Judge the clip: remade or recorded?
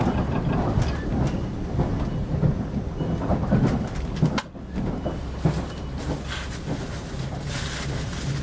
recorded